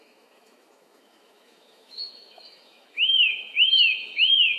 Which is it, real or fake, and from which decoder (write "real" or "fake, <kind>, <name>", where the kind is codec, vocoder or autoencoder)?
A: fake, autoencoder, DAC-VAE